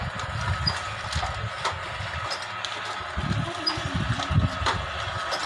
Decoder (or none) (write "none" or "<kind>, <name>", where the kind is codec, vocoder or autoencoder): none